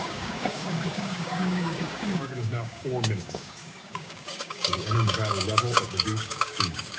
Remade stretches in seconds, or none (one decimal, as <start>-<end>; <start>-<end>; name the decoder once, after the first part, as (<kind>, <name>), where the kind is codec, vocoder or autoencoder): 0.0-7.0 (codec, DAC)